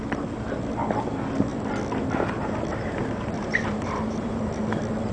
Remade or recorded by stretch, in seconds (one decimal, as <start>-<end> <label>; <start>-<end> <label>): 0.0-2.7 recorded; 2.7-4.6 remade; 4.6-5.1 recorded